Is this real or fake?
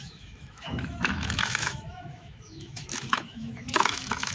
fake